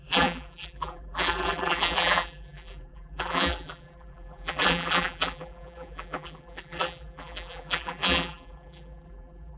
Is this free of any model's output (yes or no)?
no